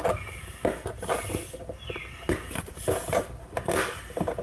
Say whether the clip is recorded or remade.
recorded